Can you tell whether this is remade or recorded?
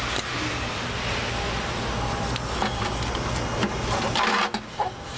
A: recorded